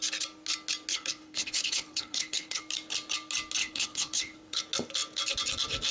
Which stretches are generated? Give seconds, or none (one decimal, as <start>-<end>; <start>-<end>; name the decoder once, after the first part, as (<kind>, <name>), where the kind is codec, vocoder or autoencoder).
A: 0.9-2.6 (codec, HILCodec); 3.6-4.6